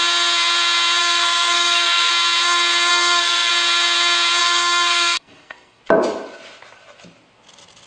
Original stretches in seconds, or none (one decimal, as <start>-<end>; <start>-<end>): 0.0-1.0; 2.1-2.9; 3.5-4.4; 5.8-7.9

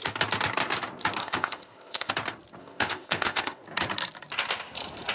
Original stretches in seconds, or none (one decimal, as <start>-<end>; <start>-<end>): 0.0-1.2; 2.1-2.6; 3.6-5.1

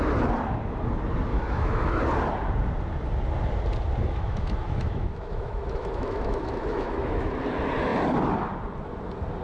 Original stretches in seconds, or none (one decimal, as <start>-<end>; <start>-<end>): 0.0-1.3; 2.0-4.0; 7.3-9.4

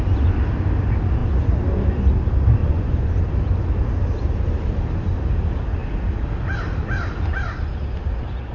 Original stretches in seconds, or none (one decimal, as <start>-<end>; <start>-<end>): 0.0-2.6; 3.1-8.5